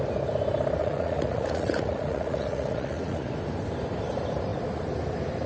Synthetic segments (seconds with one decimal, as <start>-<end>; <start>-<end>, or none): 0.8-3.3